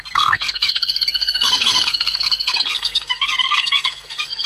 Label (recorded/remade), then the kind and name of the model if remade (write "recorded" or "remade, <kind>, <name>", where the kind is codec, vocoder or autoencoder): remade, codec, SNAC